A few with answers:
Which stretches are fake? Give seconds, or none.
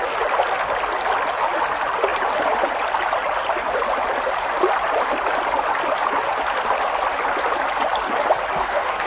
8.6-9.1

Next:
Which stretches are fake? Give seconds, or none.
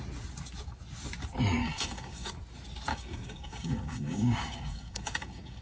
1.6-2.3; 2.9-5.6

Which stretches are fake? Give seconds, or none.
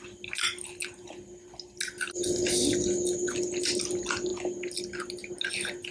none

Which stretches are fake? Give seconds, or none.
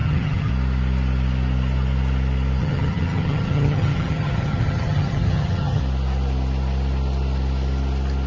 0.0-0.5; 2.6-5.8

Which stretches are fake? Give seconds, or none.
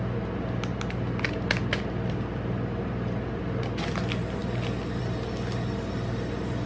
none